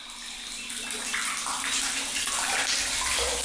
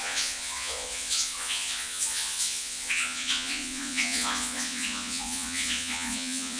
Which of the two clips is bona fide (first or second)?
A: first